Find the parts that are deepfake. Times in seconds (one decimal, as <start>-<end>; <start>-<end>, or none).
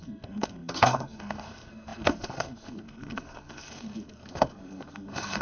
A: 0.0-5.4